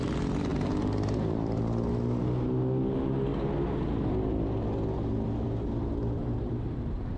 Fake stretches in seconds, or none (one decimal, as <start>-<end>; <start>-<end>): 0.5-1.6